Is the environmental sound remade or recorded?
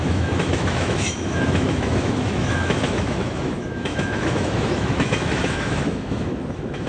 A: remade